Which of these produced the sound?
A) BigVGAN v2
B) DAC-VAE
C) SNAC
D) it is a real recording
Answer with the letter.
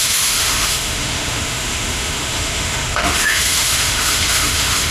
B